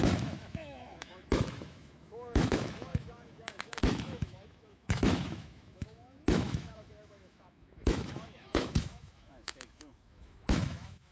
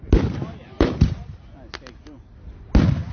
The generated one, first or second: first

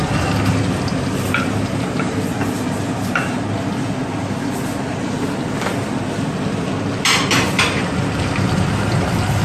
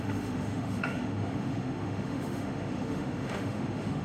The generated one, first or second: second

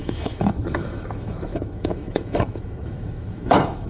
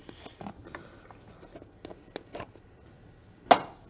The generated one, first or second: first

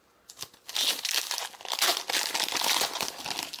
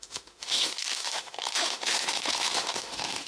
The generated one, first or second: second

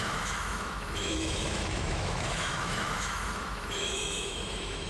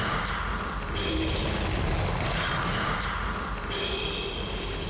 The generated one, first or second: first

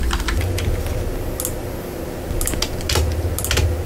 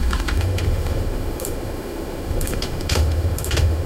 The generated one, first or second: second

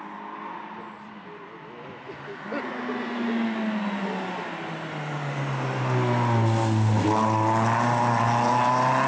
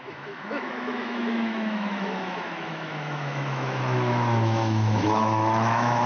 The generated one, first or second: second